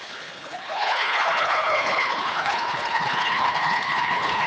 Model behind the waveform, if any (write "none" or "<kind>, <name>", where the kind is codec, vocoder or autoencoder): codec, HILCodec